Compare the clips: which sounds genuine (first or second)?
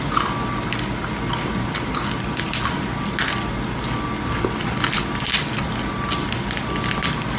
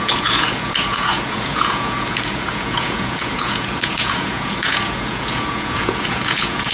first